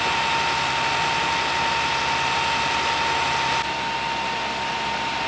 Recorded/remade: recorded